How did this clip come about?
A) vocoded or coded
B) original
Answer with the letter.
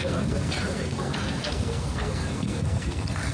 A